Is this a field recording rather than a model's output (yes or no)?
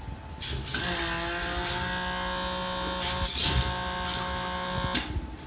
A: yes